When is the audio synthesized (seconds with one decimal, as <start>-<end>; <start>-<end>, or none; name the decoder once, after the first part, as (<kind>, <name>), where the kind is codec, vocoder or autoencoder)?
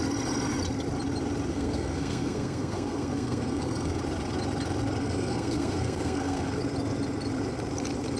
1.5-4.0 (codec, SNAC); 5.0-6.6